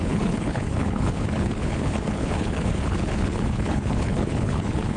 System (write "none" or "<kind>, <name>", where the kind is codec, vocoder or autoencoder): codec, HILCodec